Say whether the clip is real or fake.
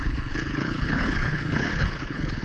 fake